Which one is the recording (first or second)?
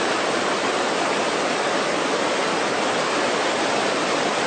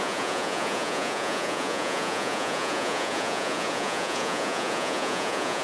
first